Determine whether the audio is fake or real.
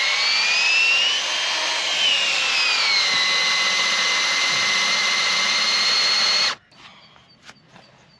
real